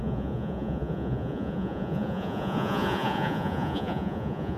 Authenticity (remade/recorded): remade